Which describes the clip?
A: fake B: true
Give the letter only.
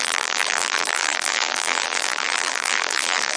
A